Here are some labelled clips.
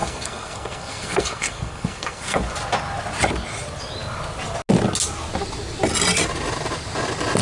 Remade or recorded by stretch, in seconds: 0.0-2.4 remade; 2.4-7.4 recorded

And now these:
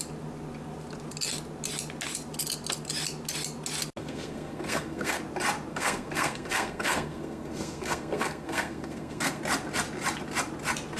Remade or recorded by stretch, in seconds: 0.0-4.0 recorded; 4.0-5.2 remade; 5.2-5.7 recorded; 5.7-9.4 remade; 9.4-11.0 recorded